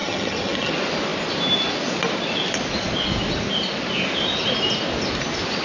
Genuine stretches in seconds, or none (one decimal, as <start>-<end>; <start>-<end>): 0.7-5.6